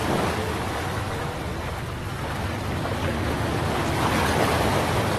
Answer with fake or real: real